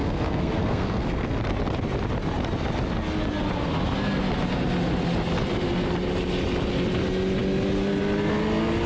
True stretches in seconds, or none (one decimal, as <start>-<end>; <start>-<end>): 1.4-8.9